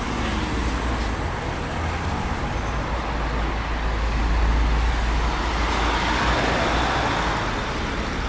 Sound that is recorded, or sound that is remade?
recorded